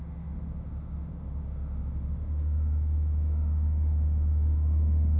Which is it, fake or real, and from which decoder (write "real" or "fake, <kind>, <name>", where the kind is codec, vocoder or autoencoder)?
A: fake, autoencoder, DAC-VAE